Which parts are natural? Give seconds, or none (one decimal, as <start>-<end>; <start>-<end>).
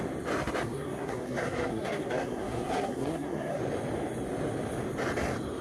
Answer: 0.0-0.6; 3.6-5.6